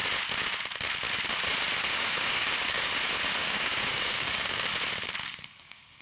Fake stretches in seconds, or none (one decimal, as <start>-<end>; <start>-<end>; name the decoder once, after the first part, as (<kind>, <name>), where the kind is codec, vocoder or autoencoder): 1.8-2.9 (codec, DAC); 3.4-4.7; 5.6-6.0